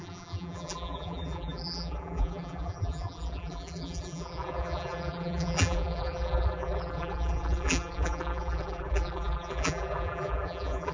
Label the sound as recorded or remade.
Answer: remade